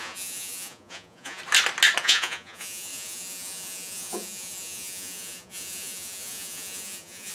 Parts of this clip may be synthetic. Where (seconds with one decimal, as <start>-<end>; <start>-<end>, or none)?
0.0-1.4; 2.0-7.3